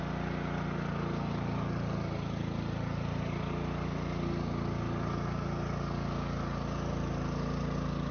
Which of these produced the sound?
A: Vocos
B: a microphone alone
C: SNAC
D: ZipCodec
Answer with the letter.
B